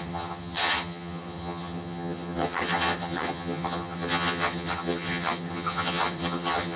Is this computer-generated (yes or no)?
yes